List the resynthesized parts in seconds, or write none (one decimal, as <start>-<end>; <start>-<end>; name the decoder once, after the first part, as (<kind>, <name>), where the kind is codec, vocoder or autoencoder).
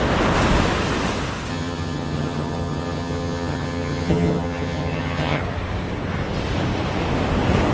1.5-5.4 (vocoder, HiFi-GAN)